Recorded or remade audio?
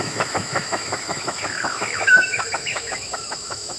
remade